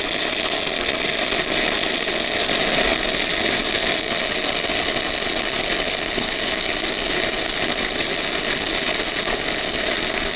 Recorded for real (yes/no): yes